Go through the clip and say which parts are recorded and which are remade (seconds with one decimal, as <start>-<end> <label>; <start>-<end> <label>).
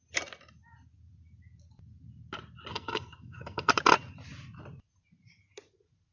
0.0-2.7 recorded; 2.7-3.7 remade; 3.7-6.1 recorded